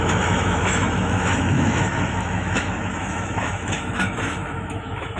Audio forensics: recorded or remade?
remade